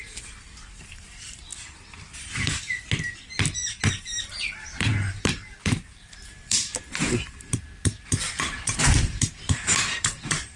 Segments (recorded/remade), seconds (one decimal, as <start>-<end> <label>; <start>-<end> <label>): 0.0-1.5 remade; 1.5-3.9 recorded; 3.9-10.6 remade